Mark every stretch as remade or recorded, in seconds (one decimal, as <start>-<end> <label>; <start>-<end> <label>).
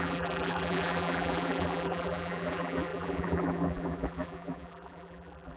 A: 0.0-5.6 remade